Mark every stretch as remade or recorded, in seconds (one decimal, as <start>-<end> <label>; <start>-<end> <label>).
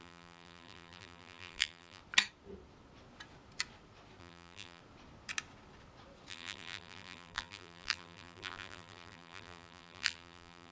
0.0-2.0 remade; 2.0-4.2 recorded; 4.2-4.8 remade; 4.8-6.3 recorded; 6.3-10.7 remade